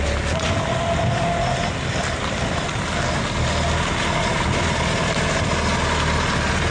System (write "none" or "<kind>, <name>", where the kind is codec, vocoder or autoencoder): none